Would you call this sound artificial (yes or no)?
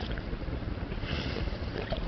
yes